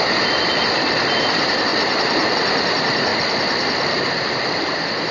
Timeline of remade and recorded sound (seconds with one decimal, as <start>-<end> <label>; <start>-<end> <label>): 0.0-5.1 recorded